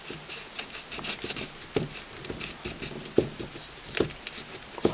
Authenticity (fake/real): real